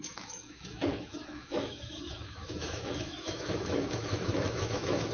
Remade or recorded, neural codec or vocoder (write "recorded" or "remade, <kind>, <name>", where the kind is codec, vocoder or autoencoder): remade, autoencoder, DAC-VAE